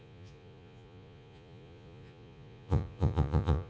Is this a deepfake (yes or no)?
yes